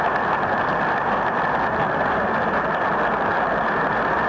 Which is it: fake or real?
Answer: real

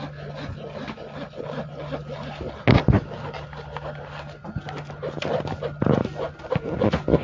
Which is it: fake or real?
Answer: real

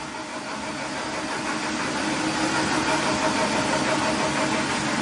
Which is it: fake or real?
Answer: real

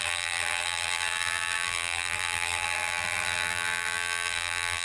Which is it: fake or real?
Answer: fake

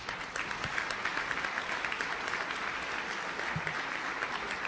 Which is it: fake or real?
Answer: real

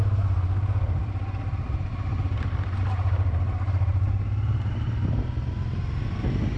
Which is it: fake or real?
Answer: real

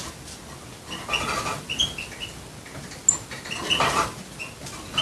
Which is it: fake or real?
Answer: real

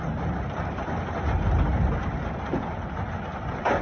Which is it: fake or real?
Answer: real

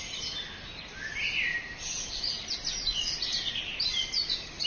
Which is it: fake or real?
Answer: real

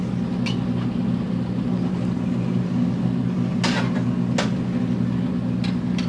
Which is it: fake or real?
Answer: real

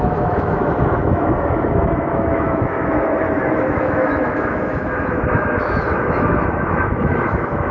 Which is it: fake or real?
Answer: fake